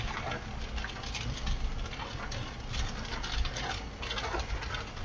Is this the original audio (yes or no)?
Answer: yes